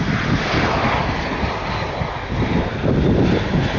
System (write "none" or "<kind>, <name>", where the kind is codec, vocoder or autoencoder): none